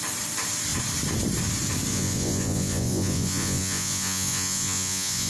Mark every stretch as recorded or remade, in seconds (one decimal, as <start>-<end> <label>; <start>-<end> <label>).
0.0-1.9 recorded; 1.9-5.3 remade